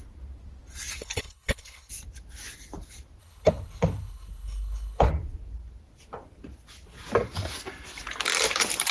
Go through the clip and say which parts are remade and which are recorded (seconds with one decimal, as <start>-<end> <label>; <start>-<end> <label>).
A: 0.0-1.0 recorded; 1.0-1.9 remade; 1.9-3.2 recorded; 3.2-5.1 remade; 5.1-8.9 recorded